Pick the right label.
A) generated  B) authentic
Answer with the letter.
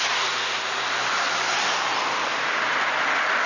B